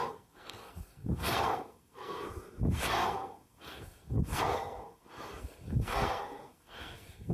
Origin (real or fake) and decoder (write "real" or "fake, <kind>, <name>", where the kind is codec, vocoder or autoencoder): fake, codec, SNAC